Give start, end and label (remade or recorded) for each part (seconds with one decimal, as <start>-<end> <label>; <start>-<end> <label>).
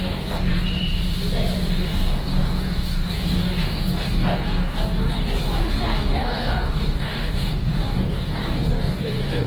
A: 0.0-0.5 remade; 0.5-1.7 recorded; 1.7-9.5 remade